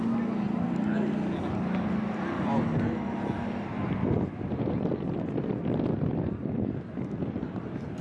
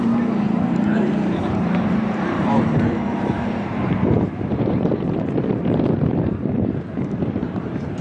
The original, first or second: first